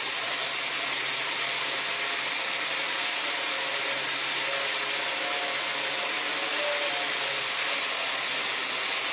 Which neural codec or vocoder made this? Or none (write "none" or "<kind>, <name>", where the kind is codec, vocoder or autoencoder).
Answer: none